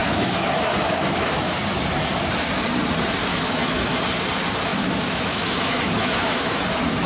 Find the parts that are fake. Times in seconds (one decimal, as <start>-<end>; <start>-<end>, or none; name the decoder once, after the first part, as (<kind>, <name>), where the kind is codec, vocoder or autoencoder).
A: 0.0-1.6 (autoencoder, DAC-VAE); 3.3-4.0; 4.7-6.6

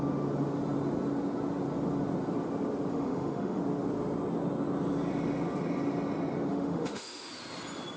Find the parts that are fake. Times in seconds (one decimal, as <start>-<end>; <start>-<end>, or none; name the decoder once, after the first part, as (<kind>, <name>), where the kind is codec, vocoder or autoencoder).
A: 2.9-3.6 (autoencoder, DAC-VAE); 6.5-7.3